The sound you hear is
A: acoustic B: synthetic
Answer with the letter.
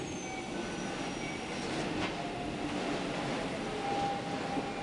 A